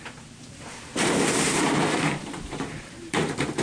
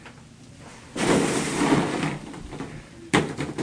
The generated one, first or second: first